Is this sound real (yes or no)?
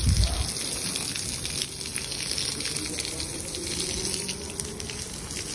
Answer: yes